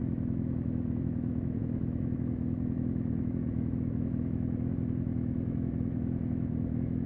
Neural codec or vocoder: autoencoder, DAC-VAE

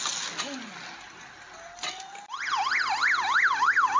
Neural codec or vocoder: none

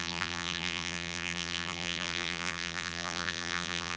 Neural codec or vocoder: vocoder, BigVGAN v2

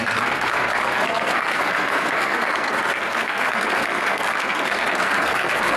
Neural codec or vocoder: codec, SNAC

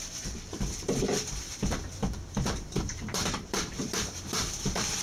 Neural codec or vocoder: vocoder, BigVGAN v2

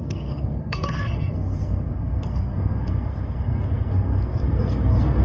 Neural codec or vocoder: codec, SNAC